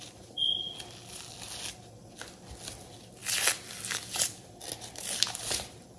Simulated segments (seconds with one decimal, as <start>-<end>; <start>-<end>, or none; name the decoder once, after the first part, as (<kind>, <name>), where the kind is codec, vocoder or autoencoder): none